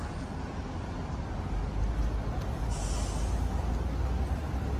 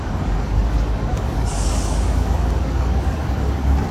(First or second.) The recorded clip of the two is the first